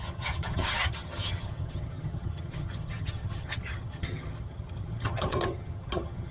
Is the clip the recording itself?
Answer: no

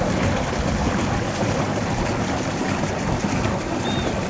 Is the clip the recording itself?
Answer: yes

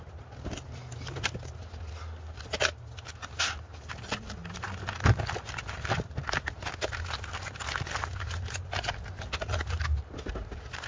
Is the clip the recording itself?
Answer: yes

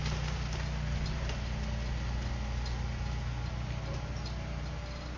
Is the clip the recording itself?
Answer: yes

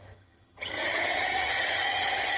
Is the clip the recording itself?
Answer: no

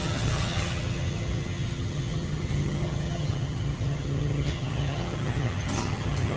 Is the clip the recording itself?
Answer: no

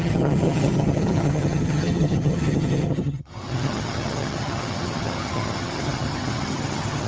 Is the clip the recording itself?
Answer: no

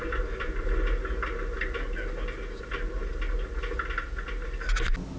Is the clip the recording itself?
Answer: yes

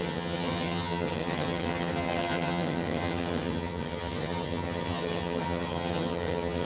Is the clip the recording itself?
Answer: no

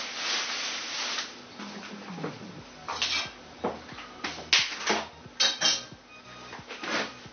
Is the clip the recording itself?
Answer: yes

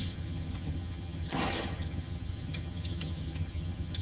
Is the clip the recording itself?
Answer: no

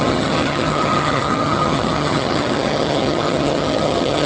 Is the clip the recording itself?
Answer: no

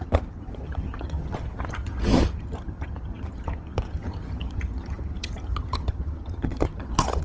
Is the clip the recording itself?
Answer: no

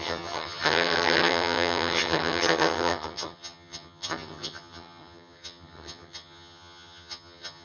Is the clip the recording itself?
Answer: no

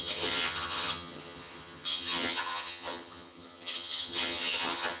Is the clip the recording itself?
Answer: no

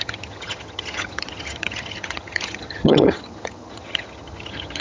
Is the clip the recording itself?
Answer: no